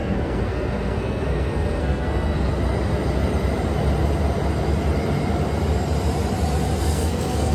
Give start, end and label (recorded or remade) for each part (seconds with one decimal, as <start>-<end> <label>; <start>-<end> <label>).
0.0-2.5 remade; 2.5-6.8 recorded; 6.8-7.5 remade